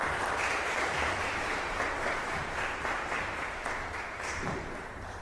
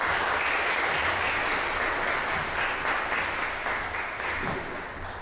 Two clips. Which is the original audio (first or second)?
second